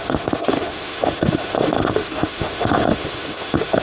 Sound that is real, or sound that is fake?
fake